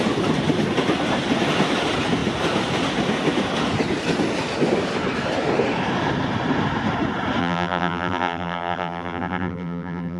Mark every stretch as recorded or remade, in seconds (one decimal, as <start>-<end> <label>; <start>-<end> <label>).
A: 0.0-7.4 recorded; 7.4-10.2 remade